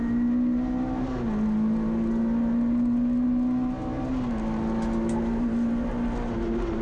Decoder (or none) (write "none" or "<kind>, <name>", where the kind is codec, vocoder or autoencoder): none